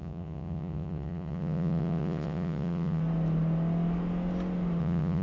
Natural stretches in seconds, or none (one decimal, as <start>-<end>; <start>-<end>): 3.0-4.8